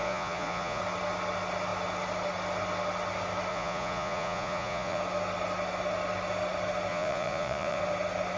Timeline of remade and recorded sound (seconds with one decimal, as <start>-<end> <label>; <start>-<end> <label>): 0.0-0.8 remade; 0.8-3.5 recorded; 3.5-5.0 remade; 5.0-6.9 recorded; 6.9-7.8 remade; 7.8-8.4 recorded